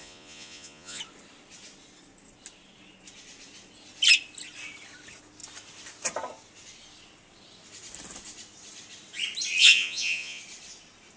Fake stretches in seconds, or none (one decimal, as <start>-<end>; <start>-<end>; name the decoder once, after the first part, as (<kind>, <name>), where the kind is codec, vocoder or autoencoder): 0.0-1.0 (vocoder, Vocos); 9.6-10.4